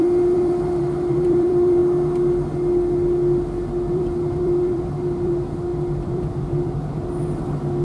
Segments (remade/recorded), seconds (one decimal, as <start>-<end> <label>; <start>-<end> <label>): 0.0-1.8 remade; 1.8-3.9 recorded; 3.9-7.8 remade

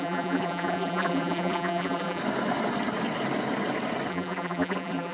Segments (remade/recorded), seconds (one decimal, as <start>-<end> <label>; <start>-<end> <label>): 0.0-2.2 remade; 2.2-4.1 recorded; 4.1-5.1 remade

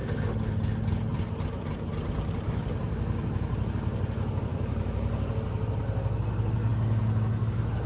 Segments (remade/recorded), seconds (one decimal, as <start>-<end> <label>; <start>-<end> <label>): 0.0-1.1 recorded; 1.1-2.9 remade; 2.9-4.5 recorded; 4.5-5.3 remade; 5.3-7.9 recorded

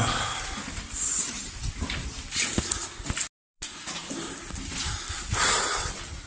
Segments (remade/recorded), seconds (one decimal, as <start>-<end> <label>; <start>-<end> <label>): 0.0-3.4 recorded; 3.4-5.8 remade; 5.8-6.3 recorded

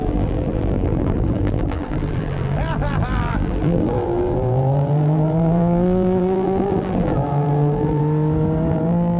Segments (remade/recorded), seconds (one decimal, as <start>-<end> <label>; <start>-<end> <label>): 0.0-8.0 remade; 8.0-8.7 recorded; 8.7-9.2 remade